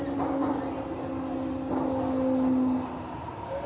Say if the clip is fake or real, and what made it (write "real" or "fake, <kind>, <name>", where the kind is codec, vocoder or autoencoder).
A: real